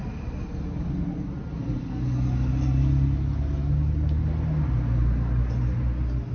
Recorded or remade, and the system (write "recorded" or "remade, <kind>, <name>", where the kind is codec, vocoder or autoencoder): recorded